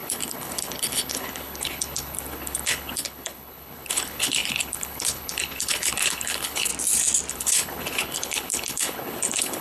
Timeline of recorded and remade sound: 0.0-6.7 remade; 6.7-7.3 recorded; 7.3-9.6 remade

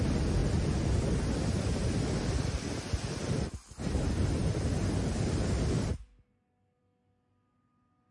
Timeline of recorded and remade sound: 0.0-8.1 recorded

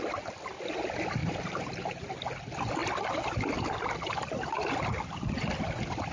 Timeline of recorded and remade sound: 0.0-1.2 recorded; 1.2-1.9 remade; 1.9-6.1 recorded

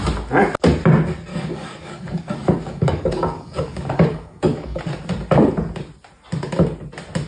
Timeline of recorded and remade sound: 0.0-1.3 recorded; 1.3-4.8 remade; 4.8-7.3 recorded

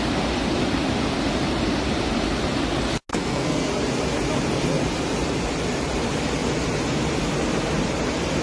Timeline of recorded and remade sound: 0.0-3.1 recorded; 3.1-3.7 remade; 3.7-8.4 recorded

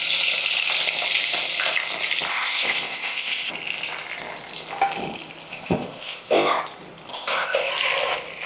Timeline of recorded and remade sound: 0.0-2.3 recorded; 2.3-3.5 remade; 3.5-5.5 recorded; 5.5-6.6 remade; 6.6-7.1 recorded; 7.1-7.7 remade; 7.7-8.5 recorded

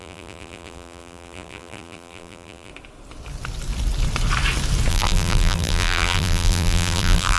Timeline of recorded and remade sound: 0.0-2.7 remade; 2.7-4.9 recorded; 4.9-7.4 remade

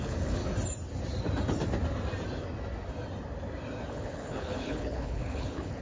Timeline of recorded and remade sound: 0.0-0.4 remade; 0.4-3.9 recorded; 3.9-5.8 remade